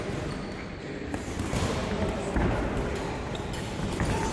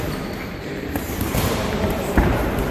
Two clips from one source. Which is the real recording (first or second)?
first